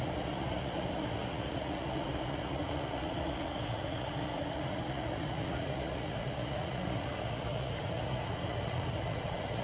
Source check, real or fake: fake